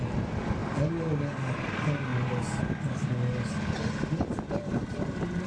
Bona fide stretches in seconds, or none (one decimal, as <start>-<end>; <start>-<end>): 0.0-5.5